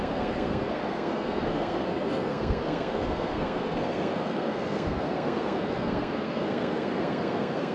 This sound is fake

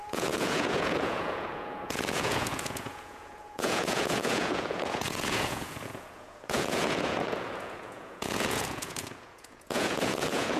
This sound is fake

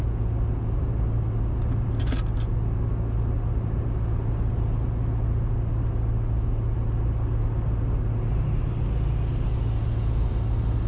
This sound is real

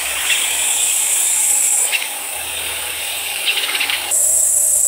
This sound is fake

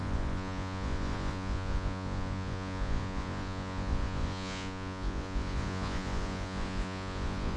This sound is fake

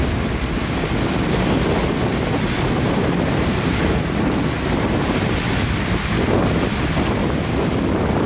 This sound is real